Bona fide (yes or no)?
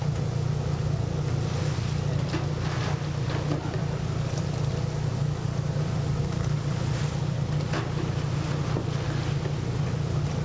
yes